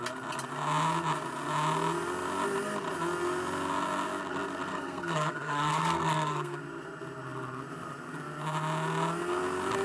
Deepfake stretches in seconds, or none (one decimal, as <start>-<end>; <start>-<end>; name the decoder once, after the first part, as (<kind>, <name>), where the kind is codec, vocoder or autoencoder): 4.7-6.6 (codec, SNAC)